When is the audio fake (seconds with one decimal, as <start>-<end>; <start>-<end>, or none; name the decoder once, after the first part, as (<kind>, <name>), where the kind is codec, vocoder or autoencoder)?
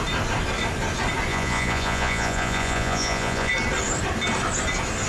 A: 1.3-3.5 (vocoder, Vocos)